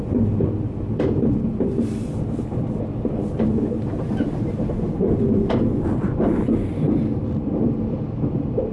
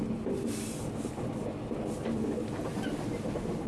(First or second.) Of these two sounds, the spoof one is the first